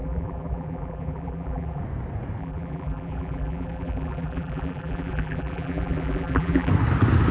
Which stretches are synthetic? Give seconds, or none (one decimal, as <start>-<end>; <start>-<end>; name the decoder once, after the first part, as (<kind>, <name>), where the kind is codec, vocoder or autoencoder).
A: 0.0-1.8 (vocoder, BigVGAN v2); 2.4-6.7